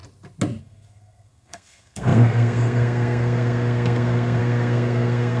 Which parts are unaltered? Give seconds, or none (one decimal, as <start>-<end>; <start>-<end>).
0.0-0.6